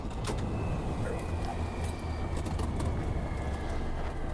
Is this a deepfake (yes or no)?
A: no